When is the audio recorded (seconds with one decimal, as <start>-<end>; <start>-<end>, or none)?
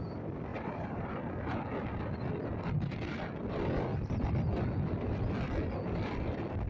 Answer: 0.0-0.5; 1.1-6.7